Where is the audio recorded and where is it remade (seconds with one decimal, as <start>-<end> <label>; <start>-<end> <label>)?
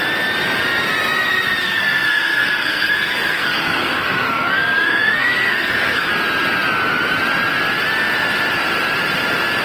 0.0-1.6 recorded; 1.6-6.1 remade; 6.1-9.6 recorded